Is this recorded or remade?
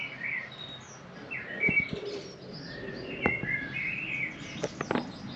recorded